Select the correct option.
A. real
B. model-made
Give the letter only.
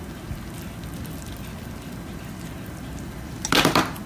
A